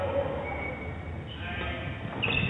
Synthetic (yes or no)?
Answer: no